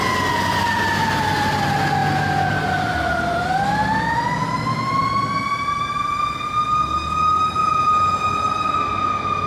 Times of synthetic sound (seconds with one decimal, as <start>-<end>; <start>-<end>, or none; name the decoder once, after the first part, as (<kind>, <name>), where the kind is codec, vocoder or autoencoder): 7.6-8.3 (vocoder, Vocos)